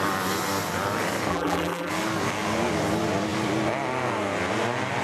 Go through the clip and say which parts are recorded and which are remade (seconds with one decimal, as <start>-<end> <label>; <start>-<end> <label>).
0.0-1.3 recorded; 1.3-1.9 remade; 1.9-5.0 recorded